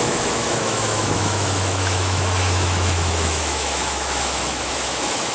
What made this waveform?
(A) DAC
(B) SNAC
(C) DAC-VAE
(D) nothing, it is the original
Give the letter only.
C